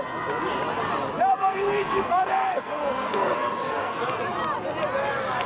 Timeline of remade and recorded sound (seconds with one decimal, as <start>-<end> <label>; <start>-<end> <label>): 0.0-1.3 recorded; 1.3-4.0 remade; 4.0-5.5 recorded

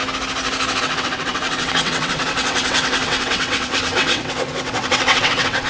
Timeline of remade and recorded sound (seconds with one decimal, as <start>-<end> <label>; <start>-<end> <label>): 0.0-0.8 recorded; 0.8-5.7 remade

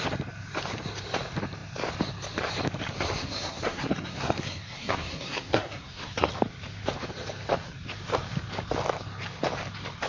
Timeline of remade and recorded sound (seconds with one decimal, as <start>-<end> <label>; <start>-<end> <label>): 0.0-3.2 recorded; 3.2-6.3 remade; 6.3-10.1 recorded

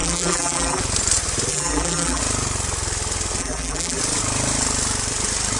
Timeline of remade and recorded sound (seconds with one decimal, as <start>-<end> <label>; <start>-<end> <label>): 0.0-0.8 remade; 0.8-1.5 recorded; 1.5-2.2 remade; 2.2-3.4 recorded; 3.4-4.0 remade; 4.0-5.6 recorded

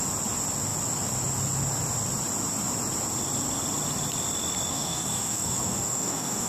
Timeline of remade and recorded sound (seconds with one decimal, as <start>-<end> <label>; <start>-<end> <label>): 0.0-4.7 recorded; 4.7-6.5 remade

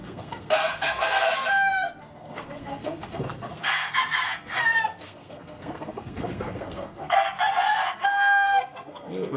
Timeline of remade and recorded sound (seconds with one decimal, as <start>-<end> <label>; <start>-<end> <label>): 0.0-9.4 remade

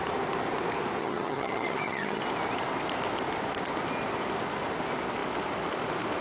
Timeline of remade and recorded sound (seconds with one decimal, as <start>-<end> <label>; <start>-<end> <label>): 0.0-1.0 recorded; 1.0-2.2 remade; 2.2-6.2 recorded